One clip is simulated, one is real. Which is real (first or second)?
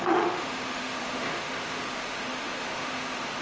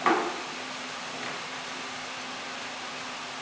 second